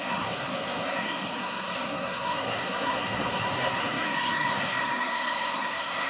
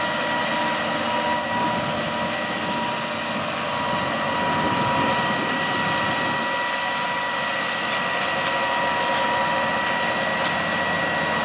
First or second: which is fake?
first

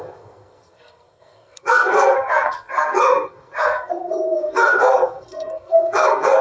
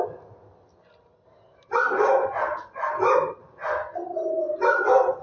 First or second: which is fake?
first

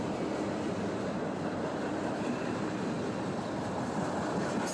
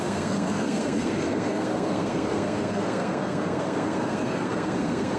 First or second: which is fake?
second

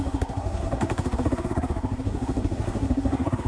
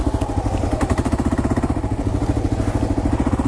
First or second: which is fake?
first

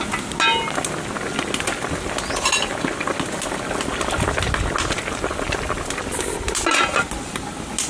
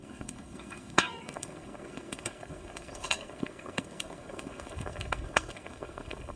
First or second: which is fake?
second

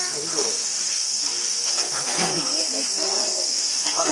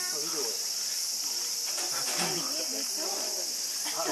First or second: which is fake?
first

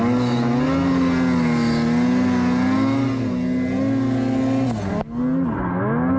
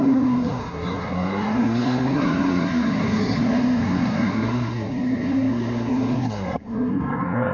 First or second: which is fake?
second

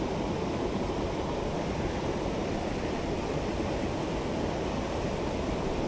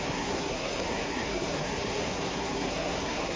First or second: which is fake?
second